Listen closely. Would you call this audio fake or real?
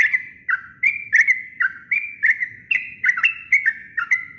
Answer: real